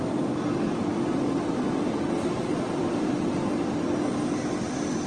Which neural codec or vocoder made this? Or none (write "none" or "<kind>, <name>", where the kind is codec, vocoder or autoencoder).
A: none